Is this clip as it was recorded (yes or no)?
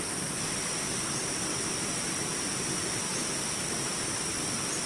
no